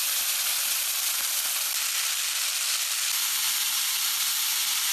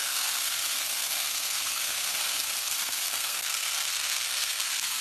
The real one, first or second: first